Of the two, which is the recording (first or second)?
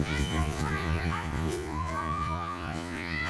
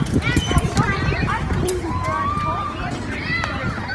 second